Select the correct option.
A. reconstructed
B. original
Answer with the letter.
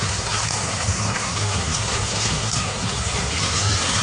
A